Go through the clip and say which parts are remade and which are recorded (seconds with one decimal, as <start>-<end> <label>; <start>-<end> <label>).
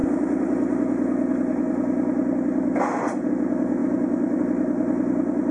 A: 0.0-3.8 recorded; 3.8-4.4 remade; 4.4-5.5 recorded